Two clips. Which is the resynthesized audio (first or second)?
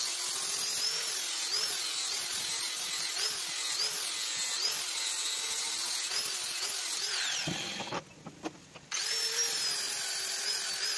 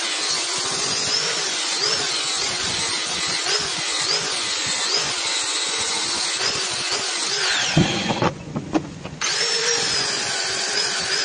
second